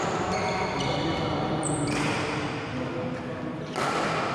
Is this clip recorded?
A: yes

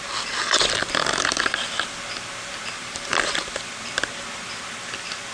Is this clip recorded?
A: yes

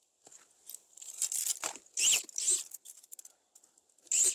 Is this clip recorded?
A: yes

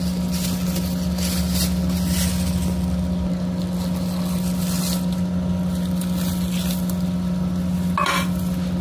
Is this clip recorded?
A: yes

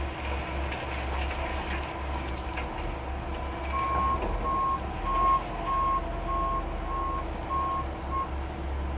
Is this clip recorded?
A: yes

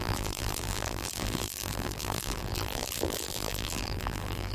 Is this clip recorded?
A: no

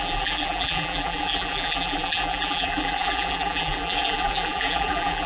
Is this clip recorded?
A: no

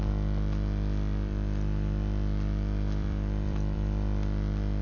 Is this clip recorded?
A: no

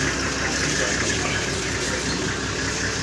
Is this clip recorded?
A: yes